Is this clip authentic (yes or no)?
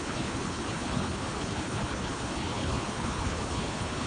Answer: no